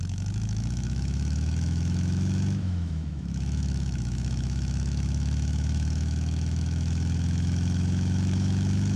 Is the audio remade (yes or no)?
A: yes